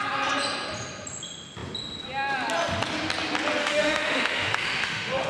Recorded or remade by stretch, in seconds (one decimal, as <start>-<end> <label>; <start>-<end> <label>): 0.0-3.6 recorded; 3.6-5.3 remade